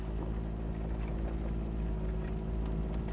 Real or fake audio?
real